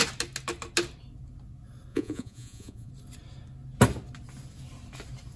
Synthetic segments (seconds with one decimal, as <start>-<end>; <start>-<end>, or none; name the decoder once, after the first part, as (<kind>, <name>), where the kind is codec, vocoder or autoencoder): 1.9-2.9 (vocoder, Vocos)